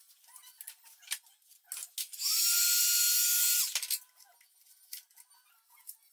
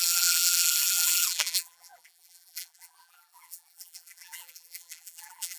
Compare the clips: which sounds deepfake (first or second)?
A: second